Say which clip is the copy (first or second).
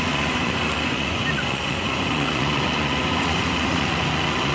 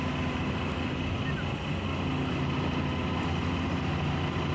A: first